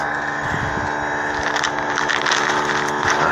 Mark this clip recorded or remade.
recorded